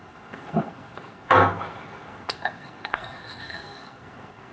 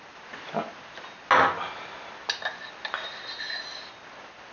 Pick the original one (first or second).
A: second